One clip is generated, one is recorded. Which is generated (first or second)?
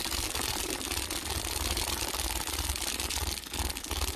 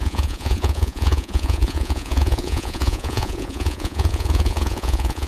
second